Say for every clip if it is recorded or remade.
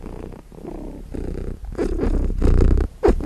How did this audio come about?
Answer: recorded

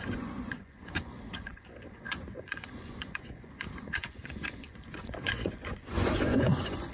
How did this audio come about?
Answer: remade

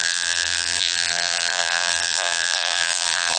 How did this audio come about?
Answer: remade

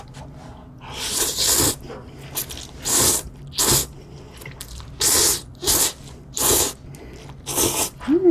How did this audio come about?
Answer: recorded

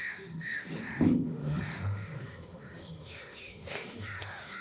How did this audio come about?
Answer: remade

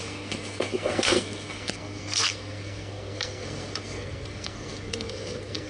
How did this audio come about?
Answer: remade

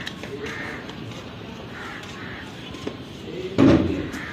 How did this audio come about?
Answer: remade